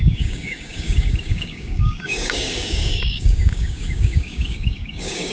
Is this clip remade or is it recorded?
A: remade